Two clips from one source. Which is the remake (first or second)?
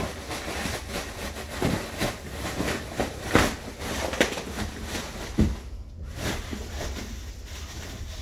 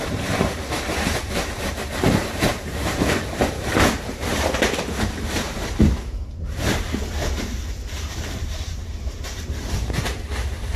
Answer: second